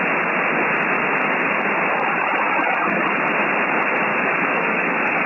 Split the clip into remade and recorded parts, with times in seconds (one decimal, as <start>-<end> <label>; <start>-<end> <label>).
0.0-4.1 recorded; 4.1-5.3 remade